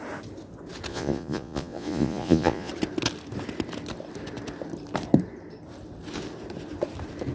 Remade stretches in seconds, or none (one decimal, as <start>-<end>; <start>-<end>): 0.9-2.7